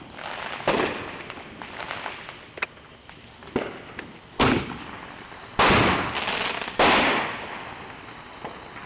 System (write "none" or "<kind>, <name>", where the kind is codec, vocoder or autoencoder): none